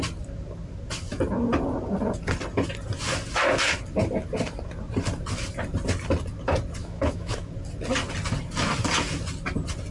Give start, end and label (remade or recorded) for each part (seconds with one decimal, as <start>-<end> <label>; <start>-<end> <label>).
0.0-6.8 recorded; 6.8-7.5 remade; 7.5-9.9 recorded